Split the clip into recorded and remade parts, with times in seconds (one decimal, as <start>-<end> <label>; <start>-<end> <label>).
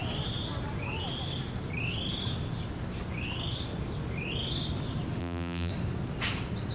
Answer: 0.0-5.2 recorded; 5.2-5.7 remade; 5.7-6.7 recorded